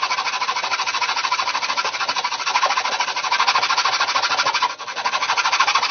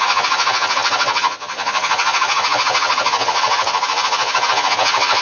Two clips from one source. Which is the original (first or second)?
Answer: first